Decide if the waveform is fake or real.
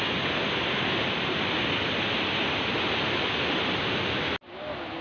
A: real